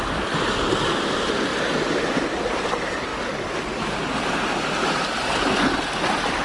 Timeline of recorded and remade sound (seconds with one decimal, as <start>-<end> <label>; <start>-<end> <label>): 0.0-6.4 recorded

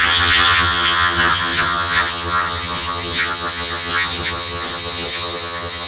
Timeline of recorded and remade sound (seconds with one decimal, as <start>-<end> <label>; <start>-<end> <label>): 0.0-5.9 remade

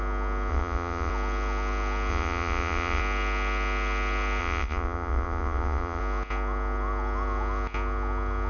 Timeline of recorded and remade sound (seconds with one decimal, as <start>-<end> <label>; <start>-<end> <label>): 0.0-0.5 recorded; 0.5-1.1 remade; 1.1-2.1 recorded; 2.1-3.0 remade; 3.0-4.4 recorded; 4.4-6.0 remade; 6.0-8.5 recorded

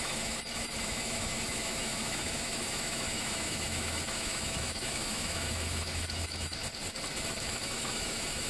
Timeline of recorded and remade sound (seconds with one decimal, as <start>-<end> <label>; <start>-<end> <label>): 0.0-6.6 remade; 6.6-7.3 recorded; 7.3-8.5 remade

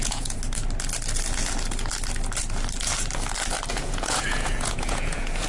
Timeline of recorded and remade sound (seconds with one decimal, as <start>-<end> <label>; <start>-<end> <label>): 0.0-0.4 remade; 0.4-3.7 recorded; 3.7-5.5 remade

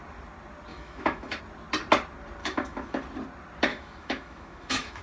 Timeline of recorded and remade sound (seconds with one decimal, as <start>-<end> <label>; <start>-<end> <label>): 0.0-0.7 recorded; 0.7-1.4 remade; 1.4-2.4 recorded; 2.4-3.0 remade; 3.0-3.7 recorded; 3.7-5.0 remade

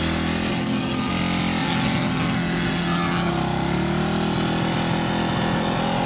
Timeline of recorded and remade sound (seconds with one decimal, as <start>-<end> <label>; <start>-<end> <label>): 0.0-0.5 recorded; 0.5-1.1 remade; 1.1-1.6 recorded; 1.6-3.3 remade; 3.3-6.0 recorded